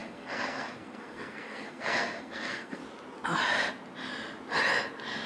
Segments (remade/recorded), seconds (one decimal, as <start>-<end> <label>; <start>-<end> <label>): 0.0-2.8 remade; 2.8-5.3 recorded